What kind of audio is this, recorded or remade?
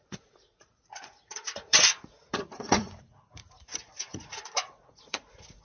remade